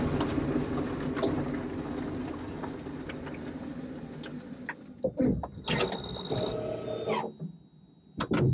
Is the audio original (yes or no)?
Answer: yes